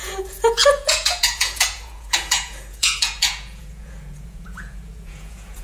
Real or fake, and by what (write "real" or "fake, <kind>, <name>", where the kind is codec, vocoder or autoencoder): fake, vocoder, Vocos